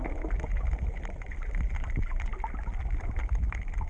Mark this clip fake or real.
fake